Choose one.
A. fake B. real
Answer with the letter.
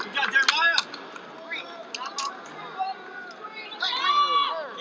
B